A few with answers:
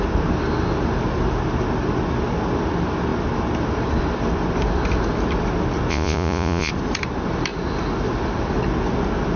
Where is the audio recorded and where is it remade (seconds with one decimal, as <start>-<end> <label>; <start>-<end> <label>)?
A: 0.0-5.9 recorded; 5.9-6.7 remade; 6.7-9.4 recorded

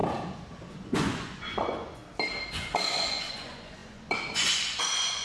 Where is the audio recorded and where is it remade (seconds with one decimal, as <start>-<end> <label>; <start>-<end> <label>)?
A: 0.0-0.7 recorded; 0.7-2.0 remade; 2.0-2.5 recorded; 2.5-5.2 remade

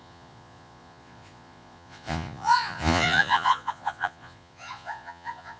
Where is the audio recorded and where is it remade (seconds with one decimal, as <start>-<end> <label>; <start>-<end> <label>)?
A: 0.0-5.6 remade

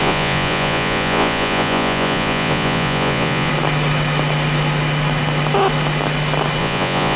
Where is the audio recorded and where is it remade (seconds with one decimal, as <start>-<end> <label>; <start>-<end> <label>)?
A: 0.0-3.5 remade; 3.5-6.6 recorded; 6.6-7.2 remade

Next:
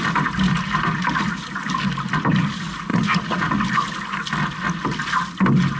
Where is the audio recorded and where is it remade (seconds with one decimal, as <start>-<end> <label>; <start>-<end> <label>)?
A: 0.0-2.9 recorded; 2.9-3.5 remade; 3.5-5.8 recorded

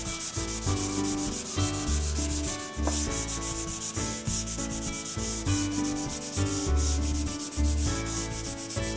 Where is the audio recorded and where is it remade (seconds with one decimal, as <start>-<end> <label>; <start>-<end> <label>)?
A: 0.0-4.0 recorded; 4.0-4.6 remade; 4.6-9.0 recorded

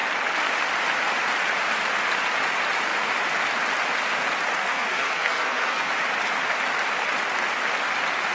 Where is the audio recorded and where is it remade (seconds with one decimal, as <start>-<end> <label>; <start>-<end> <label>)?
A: 0.0-4.6 recorded; 4.6-5.9 remade; 5.9-8.3 recorded

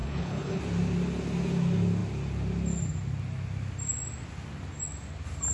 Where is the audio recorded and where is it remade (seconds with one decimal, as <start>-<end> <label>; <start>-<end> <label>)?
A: 0.0-0.6 remade; 0.6-5.5 recorded